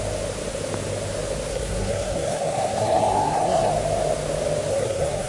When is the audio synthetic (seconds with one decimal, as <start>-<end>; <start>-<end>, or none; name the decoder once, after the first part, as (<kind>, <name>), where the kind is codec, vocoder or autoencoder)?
1.5-3.7 (codec, SNAC); 4.7-5.3